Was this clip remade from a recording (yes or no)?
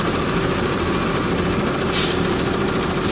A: no